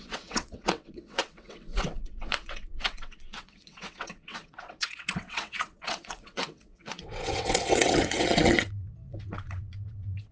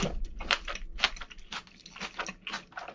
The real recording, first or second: second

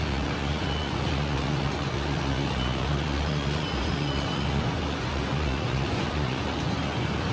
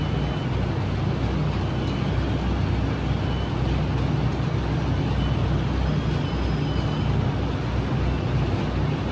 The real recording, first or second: second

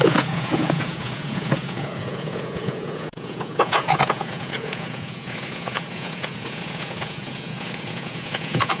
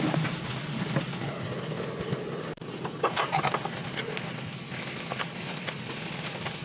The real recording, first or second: second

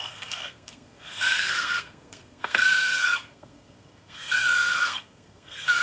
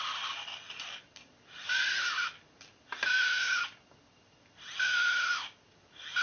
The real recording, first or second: second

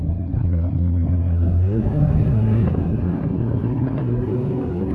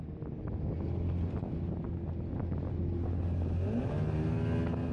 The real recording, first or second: second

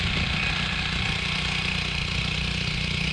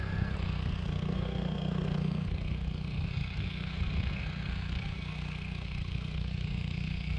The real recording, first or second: first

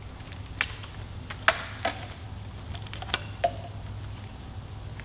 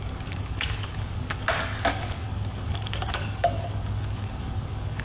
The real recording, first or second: first